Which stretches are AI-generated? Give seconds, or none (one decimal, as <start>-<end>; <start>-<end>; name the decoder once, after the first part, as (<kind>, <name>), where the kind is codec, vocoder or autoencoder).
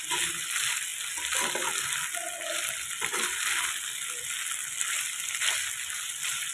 none